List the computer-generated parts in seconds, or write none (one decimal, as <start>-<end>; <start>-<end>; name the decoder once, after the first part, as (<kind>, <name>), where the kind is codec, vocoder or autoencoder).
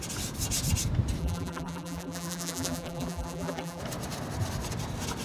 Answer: 1.2-3.8 (vocoder, BigVGAN v2)